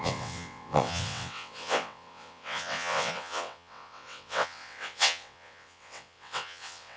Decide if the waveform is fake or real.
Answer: fake